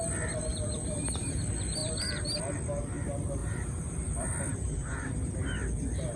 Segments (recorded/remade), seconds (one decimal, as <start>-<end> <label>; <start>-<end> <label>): 0.0-0.5 recorded; 0.5-1.4 remade; 1.4-1.8 recorded; 1.8-2.4 remade; 2.4-3.4 recorded; 3.4-5.3 remade; 5.3-6.2 recorded